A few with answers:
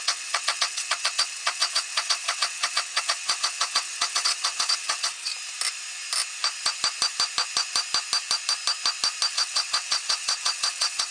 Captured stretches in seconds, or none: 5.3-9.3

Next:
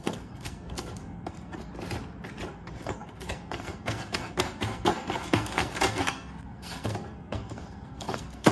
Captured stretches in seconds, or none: 1.7-2.5

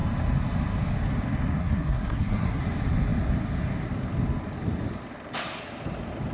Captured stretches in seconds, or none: 0.0-1.6; 2.6-6.3

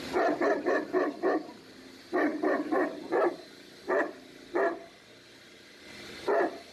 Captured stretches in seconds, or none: 0.0-6.7

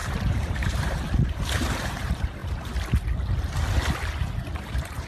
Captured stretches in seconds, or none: 2.4-4.6

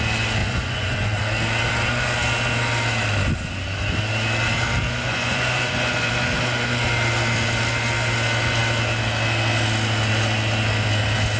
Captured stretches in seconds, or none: 0.0-0.4; 1.2-5.1; 6.1-11.4